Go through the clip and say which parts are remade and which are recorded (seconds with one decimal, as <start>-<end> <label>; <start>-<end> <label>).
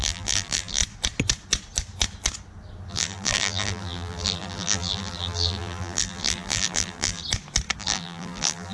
0.0-0.8 remade; 0.8-2.9 recorded; 2.9-7.2 remade; 7.2-7.8 recorded; 7.8-8.7 remade